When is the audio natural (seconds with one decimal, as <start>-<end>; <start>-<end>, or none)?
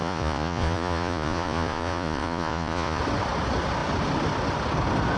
3.0-5.2